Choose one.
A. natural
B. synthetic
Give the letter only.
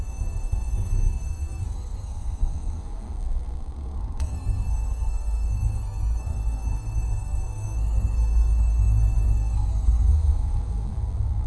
B